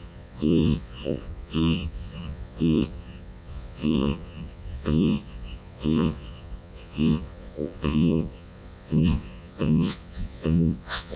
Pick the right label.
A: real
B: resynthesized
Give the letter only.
B